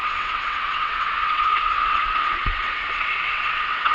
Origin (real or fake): fake